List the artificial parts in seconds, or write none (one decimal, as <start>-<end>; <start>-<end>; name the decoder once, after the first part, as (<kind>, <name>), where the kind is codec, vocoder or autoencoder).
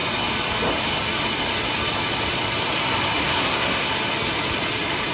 3.2-3.9 (codec, SNAC)